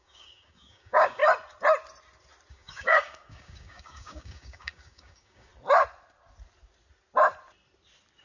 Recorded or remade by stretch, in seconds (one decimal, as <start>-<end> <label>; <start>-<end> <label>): 0.0-1.2 remade; 1.2-2.5 recorded; 2.5-5.5 remade; 5.5-8.2 recorded